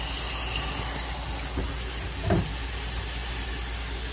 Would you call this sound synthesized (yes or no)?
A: no